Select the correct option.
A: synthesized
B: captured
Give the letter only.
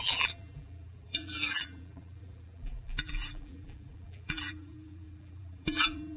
A